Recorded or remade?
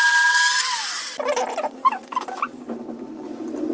recorded